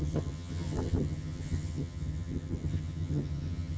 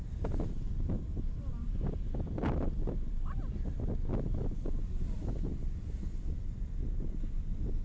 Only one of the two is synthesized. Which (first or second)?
first